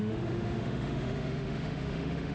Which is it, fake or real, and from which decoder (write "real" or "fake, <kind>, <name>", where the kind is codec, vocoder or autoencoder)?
fake, autoencoder, DAC-VAE